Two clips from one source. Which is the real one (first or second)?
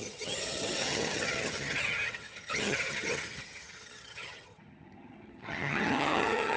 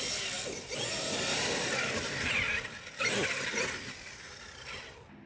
second